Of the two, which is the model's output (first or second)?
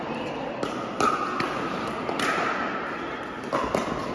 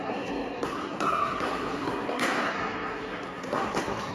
second